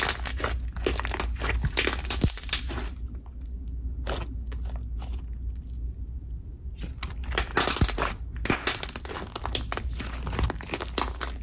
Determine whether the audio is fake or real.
real